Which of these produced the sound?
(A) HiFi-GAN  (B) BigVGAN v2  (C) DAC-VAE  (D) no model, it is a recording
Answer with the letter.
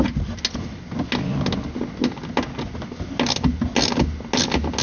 D